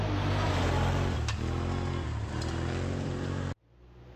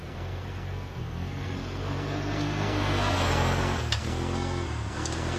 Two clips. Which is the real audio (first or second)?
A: first